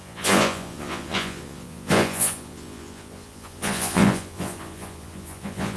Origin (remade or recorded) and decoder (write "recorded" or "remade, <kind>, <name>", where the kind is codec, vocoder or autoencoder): remade, vocoder, Vocos